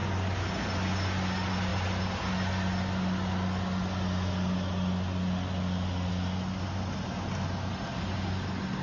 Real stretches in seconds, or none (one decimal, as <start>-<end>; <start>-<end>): 0.0-8.8